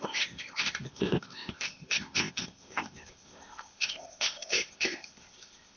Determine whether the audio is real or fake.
fake